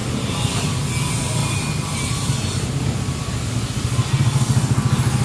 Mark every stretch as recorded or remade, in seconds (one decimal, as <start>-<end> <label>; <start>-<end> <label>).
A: 0.0-0.8 remade; 0.8-1.4 recorded; 1.4-2.4 remade; 2.4-5.2 recorded